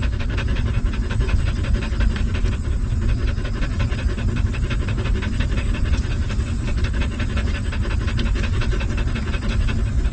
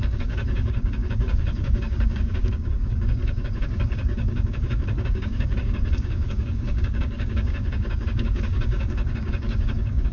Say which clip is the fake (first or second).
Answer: second